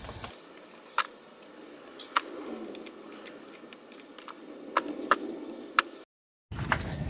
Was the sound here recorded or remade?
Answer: recorded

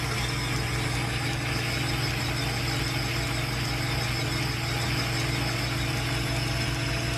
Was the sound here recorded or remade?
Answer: recorded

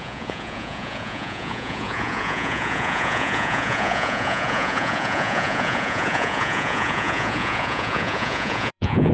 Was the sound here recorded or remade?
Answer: remade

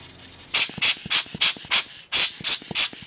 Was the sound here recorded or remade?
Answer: recorded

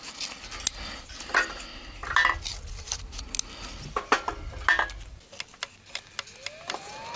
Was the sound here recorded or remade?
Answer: recorded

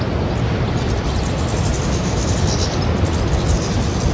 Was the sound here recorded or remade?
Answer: recorded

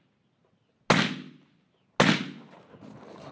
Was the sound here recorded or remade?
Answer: recorded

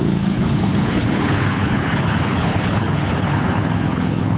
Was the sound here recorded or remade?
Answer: remade